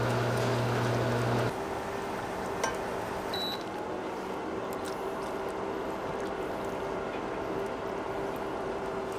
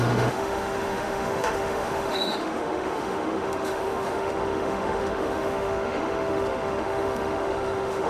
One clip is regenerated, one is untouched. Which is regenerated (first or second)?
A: second